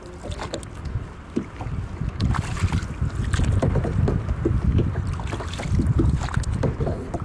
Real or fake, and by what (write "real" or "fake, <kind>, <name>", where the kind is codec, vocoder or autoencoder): real